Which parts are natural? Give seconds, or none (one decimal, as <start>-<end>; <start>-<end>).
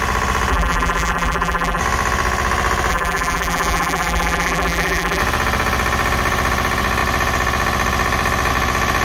0.0-0.5; 1.8-2.9; 5.2-9.0